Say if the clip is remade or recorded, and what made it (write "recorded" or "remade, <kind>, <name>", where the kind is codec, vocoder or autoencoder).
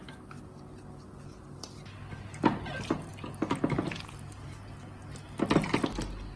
recorded